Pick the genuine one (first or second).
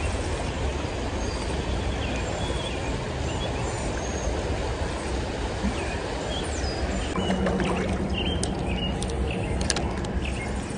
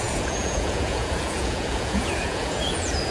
first